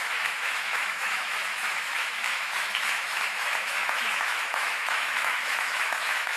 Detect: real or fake fake